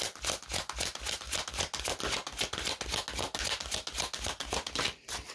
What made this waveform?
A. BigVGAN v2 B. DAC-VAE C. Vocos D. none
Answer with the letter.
D